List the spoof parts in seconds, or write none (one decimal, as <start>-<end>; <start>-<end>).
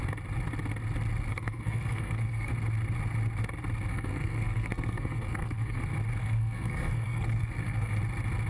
1.3-2.5; 3.9-5.8; 6.2-8.0